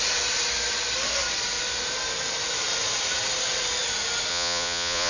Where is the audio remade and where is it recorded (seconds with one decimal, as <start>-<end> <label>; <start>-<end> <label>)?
0.0-4.3 recorded; 4.3-5.1 remade